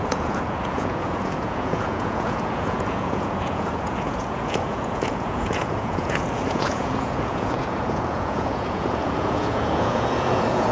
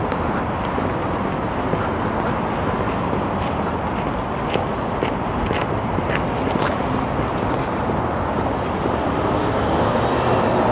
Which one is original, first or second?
second